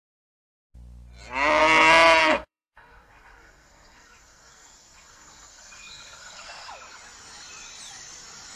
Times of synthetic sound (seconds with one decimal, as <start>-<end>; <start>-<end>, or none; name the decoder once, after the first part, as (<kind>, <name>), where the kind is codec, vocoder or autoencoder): 2.2-6.7 (codec, SNAC)